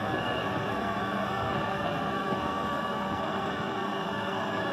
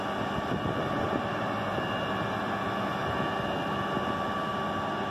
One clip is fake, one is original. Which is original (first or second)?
second